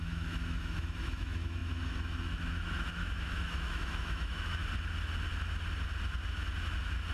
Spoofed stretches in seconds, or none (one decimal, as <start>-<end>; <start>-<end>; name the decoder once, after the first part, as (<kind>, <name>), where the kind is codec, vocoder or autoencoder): 0.0-4.6 (autoencoder, DAC-VAE)